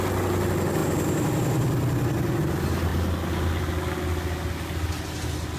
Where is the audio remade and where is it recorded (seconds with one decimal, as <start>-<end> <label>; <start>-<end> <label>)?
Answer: 0.0-5.6 recorded